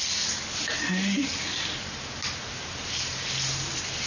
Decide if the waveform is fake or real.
real